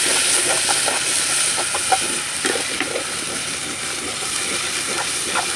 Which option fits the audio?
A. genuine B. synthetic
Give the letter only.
B